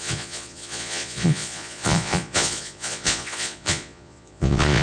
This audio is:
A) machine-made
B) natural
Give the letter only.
A